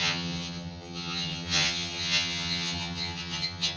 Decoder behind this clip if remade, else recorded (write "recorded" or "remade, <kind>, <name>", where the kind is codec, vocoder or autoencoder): remade, vocoder, HiFi-GAN